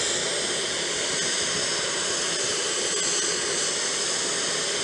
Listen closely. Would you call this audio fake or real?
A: real